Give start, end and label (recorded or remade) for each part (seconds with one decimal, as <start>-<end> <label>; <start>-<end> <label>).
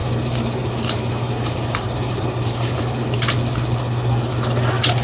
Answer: 0.0-3.0 remade; 3.0-5.0 recorded